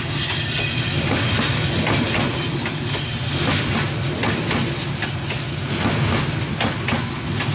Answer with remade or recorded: recorded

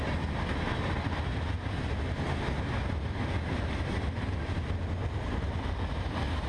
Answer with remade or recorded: recorded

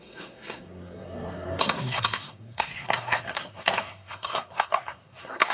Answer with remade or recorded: remade